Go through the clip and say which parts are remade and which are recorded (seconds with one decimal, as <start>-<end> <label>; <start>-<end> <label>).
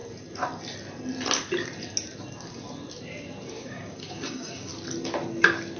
0.0-3.5 recorded; 3.5-4.7 remade; 4.7-5.8 recorded